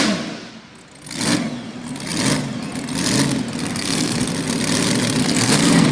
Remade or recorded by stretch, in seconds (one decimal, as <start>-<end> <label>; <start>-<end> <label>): 0.0-3.6 recorded; 3.6-4.3 remade; 4.3-5.2 recorded; 5.2-5.9 remade